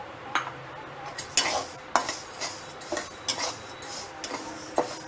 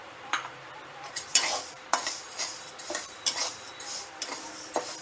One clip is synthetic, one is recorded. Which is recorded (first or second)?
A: first